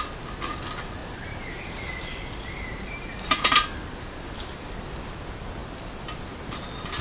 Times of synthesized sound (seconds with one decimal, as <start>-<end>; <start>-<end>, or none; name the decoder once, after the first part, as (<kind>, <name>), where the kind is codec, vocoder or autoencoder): 1.0-5.1 (vocoder, BigVGAN v2); 5.6-6.4